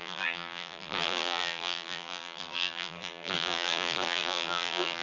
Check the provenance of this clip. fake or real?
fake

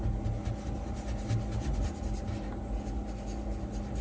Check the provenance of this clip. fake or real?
real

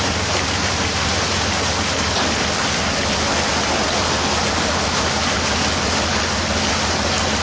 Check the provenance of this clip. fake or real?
real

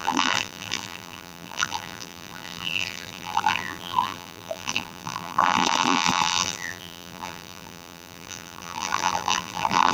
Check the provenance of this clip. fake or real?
fake